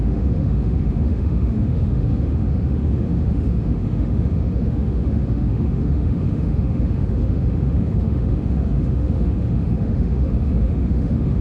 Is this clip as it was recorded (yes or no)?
no